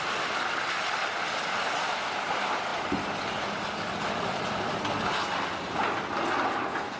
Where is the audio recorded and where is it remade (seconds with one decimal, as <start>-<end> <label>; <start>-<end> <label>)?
0.0-7.0 recorded